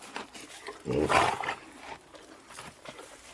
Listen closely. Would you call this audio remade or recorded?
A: recorded